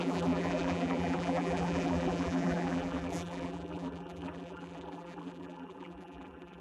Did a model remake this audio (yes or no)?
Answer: yes